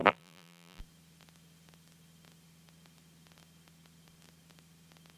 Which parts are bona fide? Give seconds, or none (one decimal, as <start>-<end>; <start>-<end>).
0.8-5.2